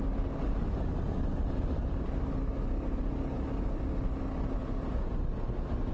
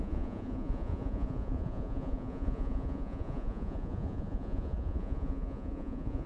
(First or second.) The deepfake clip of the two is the second